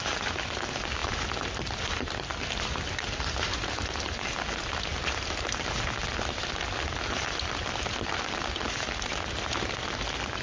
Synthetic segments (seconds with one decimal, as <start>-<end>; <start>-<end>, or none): none